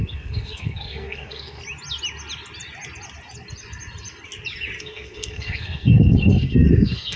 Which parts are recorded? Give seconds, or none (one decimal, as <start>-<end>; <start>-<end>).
1.6-4.8